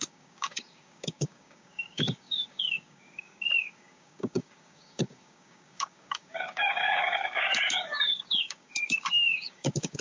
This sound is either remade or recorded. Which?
remade